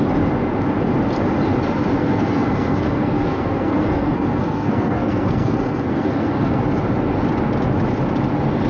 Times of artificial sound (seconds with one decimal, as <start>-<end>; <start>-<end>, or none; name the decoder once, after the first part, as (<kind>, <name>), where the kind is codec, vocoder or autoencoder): 2.0-6.6 (codec, SNAC)

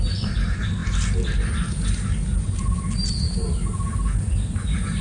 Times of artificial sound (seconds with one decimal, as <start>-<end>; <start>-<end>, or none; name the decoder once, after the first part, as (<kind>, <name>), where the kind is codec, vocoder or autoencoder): none